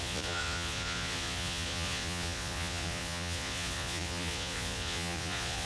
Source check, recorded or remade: remade